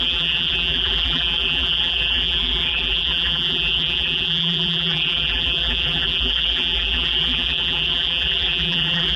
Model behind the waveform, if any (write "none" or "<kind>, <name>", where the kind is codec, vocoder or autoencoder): vocoder, BigVGAN v2